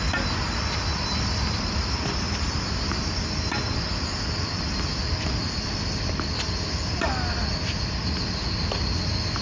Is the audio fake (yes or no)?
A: no